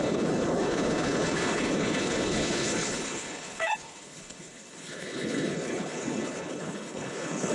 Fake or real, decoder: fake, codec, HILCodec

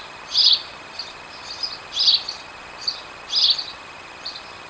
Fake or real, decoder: real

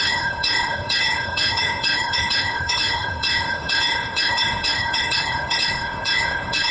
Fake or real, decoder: fake, codec, HILCodec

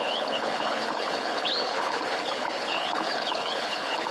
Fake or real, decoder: fake, codec, HILCodec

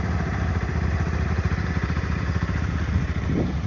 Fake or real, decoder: real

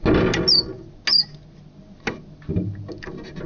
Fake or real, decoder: real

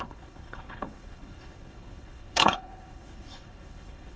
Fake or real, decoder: fake, codec, HILCodec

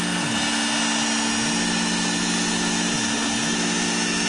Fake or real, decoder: real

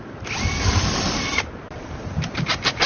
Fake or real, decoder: real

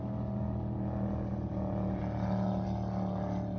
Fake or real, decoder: real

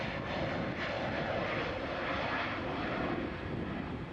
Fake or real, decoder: real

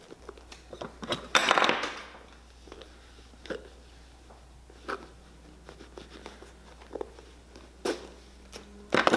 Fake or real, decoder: real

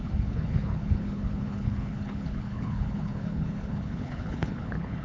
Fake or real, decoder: fake, codec, HILCodec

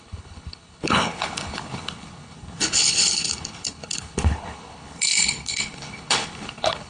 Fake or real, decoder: fake, codec, HILCodec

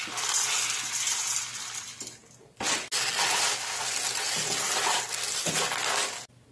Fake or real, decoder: real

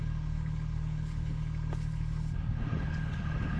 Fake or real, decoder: fake, codec, HILCodec